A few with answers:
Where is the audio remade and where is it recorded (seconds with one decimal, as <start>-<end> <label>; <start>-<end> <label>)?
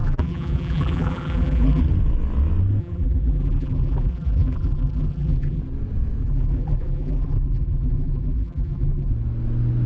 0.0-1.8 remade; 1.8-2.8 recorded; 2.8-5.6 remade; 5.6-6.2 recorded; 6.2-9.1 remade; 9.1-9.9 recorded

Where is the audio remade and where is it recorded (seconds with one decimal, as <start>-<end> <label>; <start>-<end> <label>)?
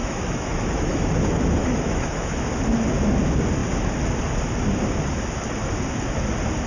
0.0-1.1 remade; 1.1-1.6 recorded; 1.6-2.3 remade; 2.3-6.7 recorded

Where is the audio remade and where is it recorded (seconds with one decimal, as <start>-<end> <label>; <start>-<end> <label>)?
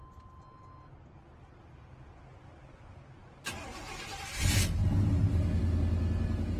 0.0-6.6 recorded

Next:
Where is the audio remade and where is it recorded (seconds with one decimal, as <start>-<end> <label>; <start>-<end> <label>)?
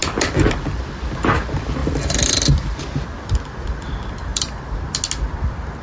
0.0-0.8 remade; 0.8-1.8 recorded; 1.8-2.8 remade; 2.8-4.3 recorded; 4.3-4.8 remade; 4.8-5.8 recorded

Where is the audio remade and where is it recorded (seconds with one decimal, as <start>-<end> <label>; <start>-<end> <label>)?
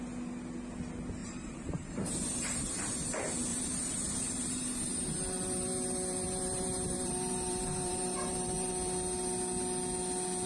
0.0-1.2 recorded; 1.2-2.8 remade; 2.8-3.5 recorded; 3.5-8.7 remade; 8.7-10.5 recorded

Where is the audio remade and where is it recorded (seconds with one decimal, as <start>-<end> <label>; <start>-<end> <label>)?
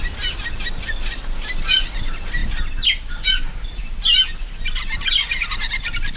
0.0-6.2 recorded